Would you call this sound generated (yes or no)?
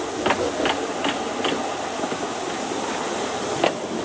no